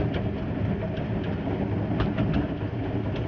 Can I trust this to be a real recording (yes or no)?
yes